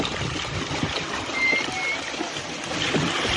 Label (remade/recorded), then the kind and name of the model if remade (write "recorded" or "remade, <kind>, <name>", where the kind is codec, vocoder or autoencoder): recorded